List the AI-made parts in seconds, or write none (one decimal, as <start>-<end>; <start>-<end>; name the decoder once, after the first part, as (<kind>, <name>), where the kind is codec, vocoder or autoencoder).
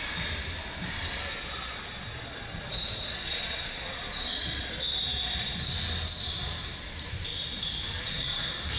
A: 1.3-5.6 (vocoder, Vocos)